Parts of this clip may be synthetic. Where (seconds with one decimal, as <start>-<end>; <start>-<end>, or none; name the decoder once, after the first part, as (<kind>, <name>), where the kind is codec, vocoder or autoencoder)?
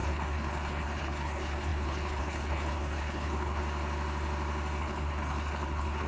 0.0-3.6 (codec, HILCodec); 4.8-6.1